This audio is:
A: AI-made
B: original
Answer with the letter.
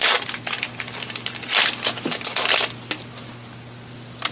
B